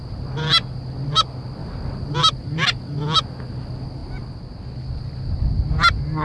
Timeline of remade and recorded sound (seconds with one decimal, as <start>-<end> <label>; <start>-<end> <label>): 0.0-6.2 recorded